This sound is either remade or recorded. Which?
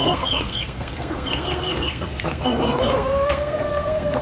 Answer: remade